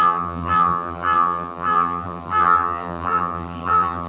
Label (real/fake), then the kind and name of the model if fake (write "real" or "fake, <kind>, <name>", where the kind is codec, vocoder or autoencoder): fake, vocoder, BigVGAN v2